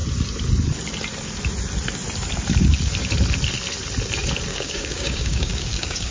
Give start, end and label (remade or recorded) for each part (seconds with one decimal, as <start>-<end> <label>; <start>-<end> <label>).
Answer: 0.0-4.5 recorded; 4.5-6.1 remade